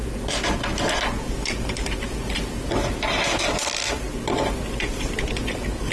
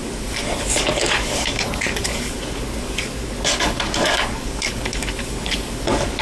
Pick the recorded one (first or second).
first